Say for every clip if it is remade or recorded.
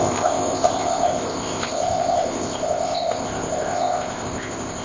remade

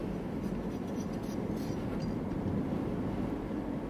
recorded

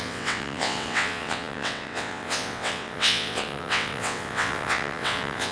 remade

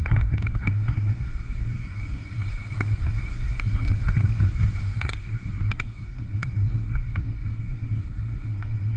remade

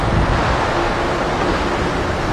recorded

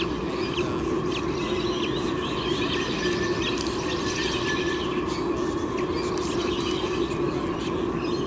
recorded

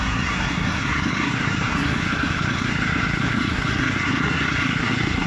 remade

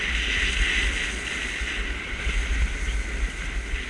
recorded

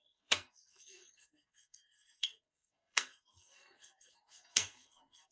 remade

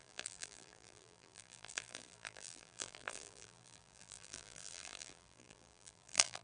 remade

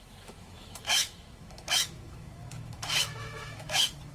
remade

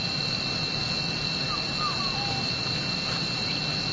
remade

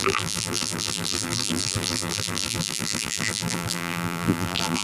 remade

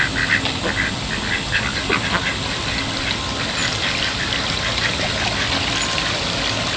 recorded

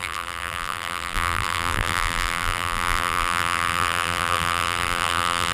remade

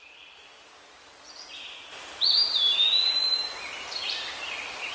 recorded